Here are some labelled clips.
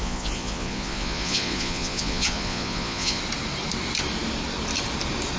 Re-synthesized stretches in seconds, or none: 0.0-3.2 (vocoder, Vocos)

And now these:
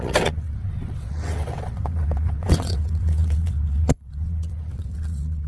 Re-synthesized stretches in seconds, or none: 0.0-5.5 (vocoder, WaveNeXt)

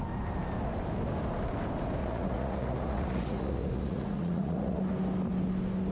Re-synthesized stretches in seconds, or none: 2.0-4.8 (vocoder, Vocos)

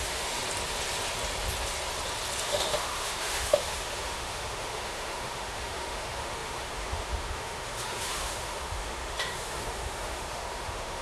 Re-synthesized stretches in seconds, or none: 0.0-0.4 (autoencoder, DAC-VAE); 2.4-11.0

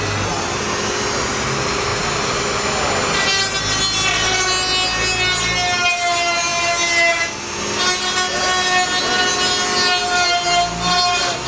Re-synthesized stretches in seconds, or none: none